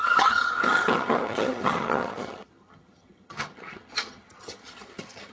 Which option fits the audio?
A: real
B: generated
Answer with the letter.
B